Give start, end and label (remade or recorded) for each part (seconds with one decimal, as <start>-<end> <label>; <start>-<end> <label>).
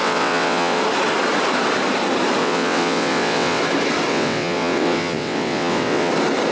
0.0-0.8 remade; 0.8-2.4 recorded; 2.4-3.6 remade; 3.6-4.1 recorded; 4.1-6.1 remade; 6.1-6.5 recorded